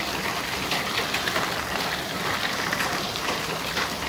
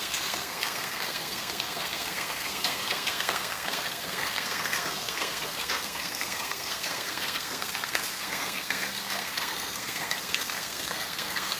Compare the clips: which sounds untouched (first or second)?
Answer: first